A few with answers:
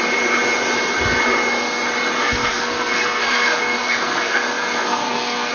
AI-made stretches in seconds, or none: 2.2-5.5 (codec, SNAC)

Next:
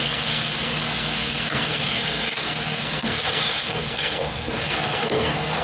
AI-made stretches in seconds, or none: 0.0-5.6 (codec, SNAC)

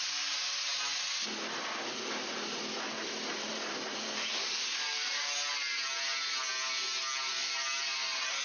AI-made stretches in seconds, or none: none

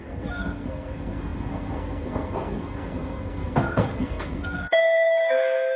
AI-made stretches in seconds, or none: 0.0-5.8 (codec, SNAC)

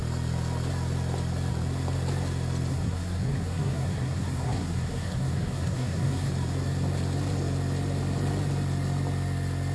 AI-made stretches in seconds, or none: 2.7-6.3 (codec, SNAC)

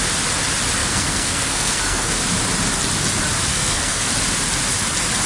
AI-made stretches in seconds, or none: 0.8-2.2 (codec, SNAC); 3.5-4.1